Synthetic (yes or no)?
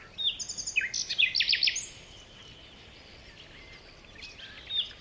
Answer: no